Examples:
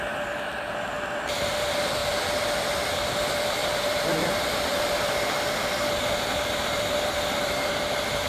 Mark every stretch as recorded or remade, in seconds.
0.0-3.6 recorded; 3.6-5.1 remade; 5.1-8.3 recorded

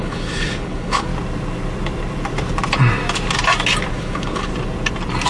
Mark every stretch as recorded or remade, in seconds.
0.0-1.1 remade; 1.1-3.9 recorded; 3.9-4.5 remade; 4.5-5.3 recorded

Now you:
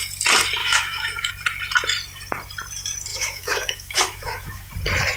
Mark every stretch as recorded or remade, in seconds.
0.0-0.6 recorded; 0.6-1.3 remade; 1.3-3.1 recorded; 3.1-4.7 remade; 4.7-5.2 recorded

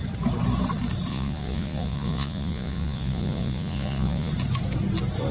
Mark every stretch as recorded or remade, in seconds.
0.0-1.1 recorded; 1.1-4.3 remade; 4.3-5.3 recorded

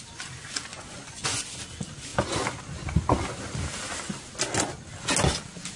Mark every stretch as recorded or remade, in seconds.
0.0-0.7 recorded; 0.7-1.5 remade; 1.5-5.8 recorded